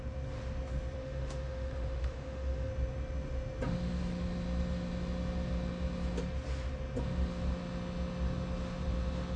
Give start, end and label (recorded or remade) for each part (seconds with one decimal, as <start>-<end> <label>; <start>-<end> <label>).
0.0-1.0 recorded; 1.0-2.7 remade; 2.7-9.4 recorded